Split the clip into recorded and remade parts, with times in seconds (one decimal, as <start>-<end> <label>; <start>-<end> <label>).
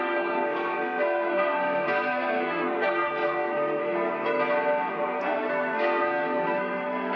0.0-3.8 remade; 3.8-4.9 recorded; 4.9-7.2 remade